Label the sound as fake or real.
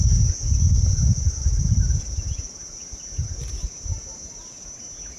real